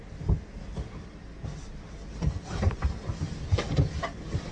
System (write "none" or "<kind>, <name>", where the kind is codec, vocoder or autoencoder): none